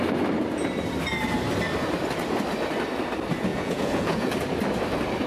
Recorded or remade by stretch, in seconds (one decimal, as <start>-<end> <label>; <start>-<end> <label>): 0.0-3.5 recorded; 3.5-4.3 remade; 4.3-5.3 recorded